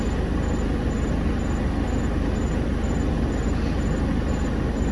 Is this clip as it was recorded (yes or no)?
yes